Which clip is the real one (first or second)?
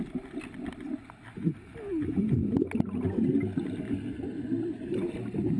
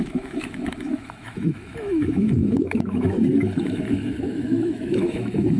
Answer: first